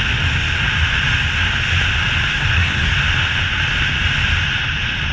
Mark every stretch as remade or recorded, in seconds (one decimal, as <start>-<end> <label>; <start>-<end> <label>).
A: 0.0-2.3 recorded; 2.3-2.9 remade; 2.9-5.1 recorded